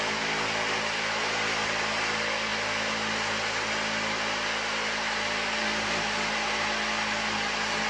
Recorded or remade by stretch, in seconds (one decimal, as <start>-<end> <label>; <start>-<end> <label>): 0.0-7.9 recorded